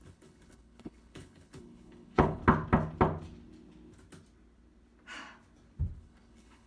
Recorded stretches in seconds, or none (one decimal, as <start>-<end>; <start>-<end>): 2.4-6.0